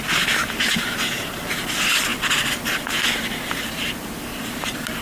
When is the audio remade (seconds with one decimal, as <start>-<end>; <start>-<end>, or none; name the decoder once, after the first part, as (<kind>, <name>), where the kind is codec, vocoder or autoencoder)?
none